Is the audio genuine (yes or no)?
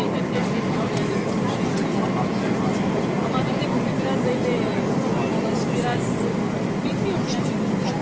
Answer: yes